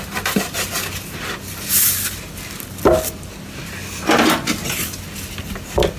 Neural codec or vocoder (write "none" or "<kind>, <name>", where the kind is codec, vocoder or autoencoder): none